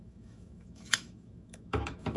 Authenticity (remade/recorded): remade